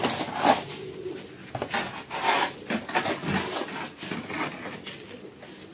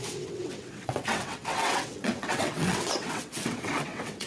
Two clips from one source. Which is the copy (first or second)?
second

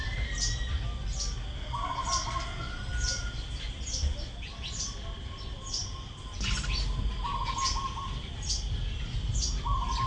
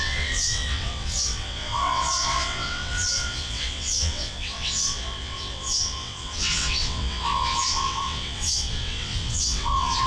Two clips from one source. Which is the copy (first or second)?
second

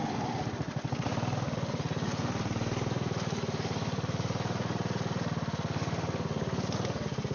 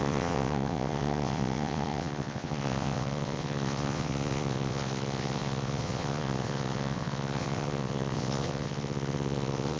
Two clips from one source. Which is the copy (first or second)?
second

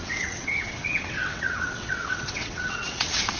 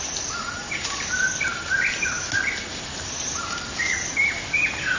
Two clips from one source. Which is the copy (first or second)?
first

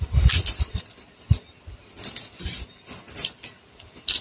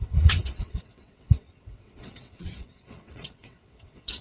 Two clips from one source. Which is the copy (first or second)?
second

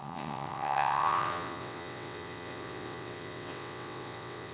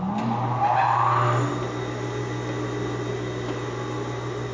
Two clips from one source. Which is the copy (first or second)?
first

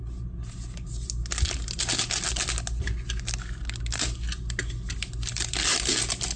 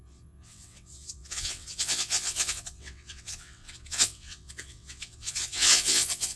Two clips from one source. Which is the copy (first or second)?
second